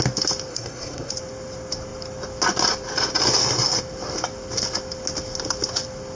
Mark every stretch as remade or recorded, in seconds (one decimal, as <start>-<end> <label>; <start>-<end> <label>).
0.0-0.5 recorded; 0.5-1.1 remade; 1.1-6.2 recorded

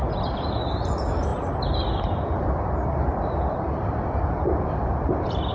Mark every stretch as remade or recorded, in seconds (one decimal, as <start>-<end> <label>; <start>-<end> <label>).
0.0-0.9 recorded; 0.9-5.5 remade

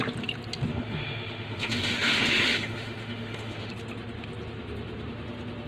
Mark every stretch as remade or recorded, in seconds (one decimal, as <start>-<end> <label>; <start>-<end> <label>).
0.0-0.7 recorded; 0.7-3.7 remade; 3.7-5.7 recorded

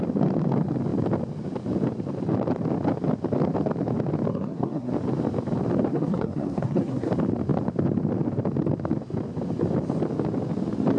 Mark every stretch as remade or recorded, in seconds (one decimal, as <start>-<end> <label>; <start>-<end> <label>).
0.0-4.3 recorded; 4.3-4.9 remade; 4.9-5.9 recorded; 5.9-7.1 remade; 7.1-11.0 recorded